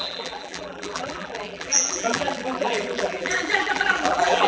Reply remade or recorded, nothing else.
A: remade